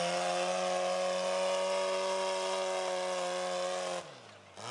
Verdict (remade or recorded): recorded